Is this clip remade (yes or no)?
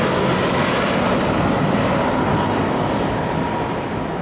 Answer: no